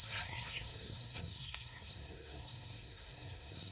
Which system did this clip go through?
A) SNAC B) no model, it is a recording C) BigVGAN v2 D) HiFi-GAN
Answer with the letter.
A